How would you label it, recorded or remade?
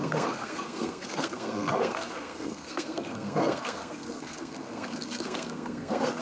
remade